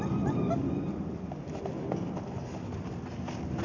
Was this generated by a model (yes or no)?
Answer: no